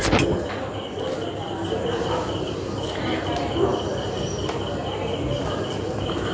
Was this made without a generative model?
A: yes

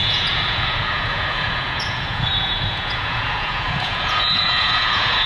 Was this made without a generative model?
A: no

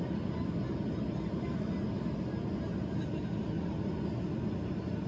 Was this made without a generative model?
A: yes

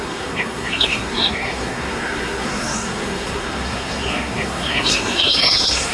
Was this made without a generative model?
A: no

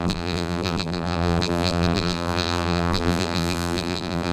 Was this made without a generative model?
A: no